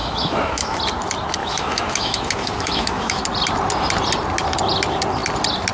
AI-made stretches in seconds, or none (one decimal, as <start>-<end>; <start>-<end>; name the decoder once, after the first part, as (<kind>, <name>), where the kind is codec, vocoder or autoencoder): 0.0-0.8 (autoencoder, DAC-VAE); 1.4-3.2